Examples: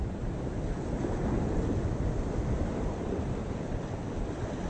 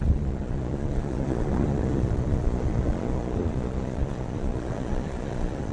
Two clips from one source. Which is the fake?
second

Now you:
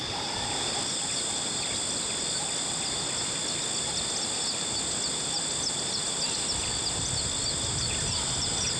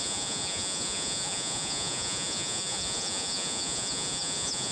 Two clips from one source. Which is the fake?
second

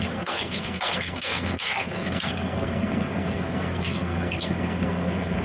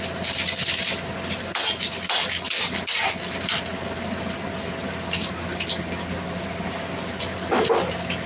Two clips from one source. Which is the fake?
first